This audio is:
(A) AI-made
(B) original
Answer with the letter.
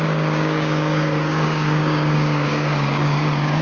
A